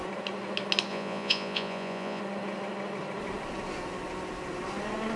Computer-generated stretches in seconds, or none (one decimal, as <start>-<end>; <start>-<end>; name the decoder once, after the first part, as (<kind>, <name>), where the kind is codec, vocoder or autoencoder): 0.9-2.2 (vocoder, Vocos)